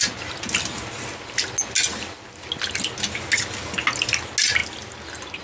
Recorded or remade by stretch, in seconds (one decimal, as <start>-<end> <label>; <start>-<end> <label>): 0.0-5.4 recorded

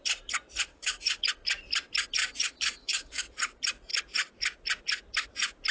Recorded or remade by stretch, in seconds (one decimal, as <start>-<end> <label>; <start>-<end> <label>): 0.0-0.7 recorded; 0.7-1.2 remade; 1.2-2.2 recorded; 2.2-3.2 remade; 3.2-5.7 recorded